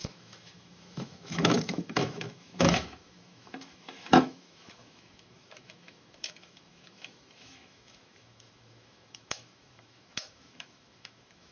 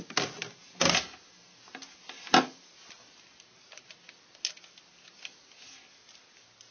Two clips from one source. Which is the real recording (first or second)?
second